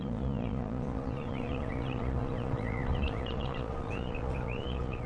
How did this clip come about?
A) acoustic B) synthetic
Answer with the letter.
B